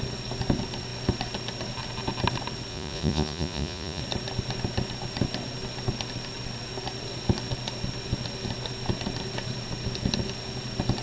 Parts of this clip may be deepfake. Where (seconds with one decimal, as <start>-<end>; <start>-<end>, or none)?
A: 2.7-4.0